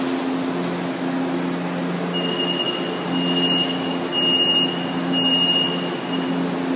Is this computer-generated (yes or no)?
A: no